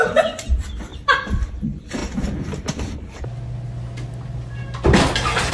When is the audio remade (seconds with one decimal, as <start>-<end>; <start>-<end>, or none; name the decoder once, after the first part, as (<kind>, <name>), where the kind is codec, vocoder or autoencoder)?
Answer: 0.0-0.9 (vocoder, BigVGAN v2); 1.5-2.0